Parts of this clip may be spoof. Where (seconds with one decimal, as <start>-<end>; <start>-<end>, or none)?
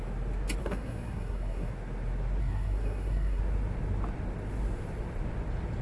0.6-1.7; 2.4-3.4